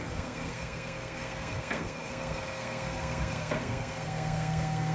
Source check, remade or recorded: remade